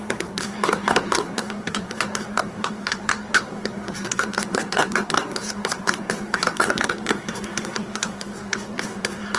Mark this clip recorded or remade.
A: remade